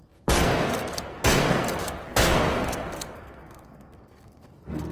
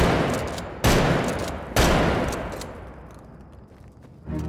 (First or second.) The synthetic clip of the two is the first